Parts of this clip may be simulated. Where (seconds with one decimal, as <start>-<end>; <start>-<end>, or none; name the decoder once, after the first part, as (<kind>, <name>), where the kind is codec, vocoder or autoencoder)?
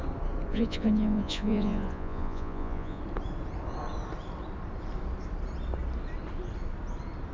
0.5-3.0 (vocoder, Vocos)